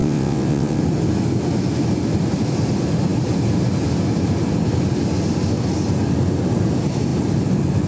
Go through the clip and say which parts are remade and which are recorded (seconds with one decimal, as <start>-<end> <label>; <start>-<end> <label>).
0.0-0.8 remade; 0.8-7.9 recorded